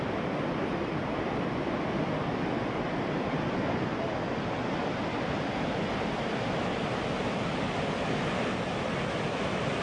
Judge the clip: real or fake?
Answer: real